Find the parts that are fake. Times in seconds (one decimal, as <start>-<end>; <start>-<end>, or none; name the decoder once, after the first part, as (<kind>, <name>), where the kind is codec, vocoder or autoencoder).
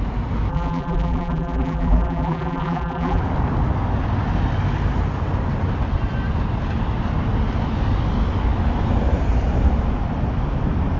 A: 0.5-3.2 (vocoder, BigVGAN v2)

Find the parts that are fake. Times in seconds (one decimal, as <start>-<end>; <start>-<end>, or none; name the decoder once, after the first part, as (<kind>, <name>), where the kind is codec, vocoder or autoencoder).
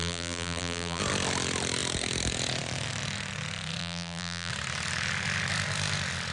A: 0.0-1.0 (vocoder, BigVGAN v2); 3.8-4.5